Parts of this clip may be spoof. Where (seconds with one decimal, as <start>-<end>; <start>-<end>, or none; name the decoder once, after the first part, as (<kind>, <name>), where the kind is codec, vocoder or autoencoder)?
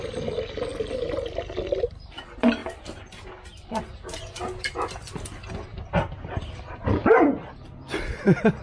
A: none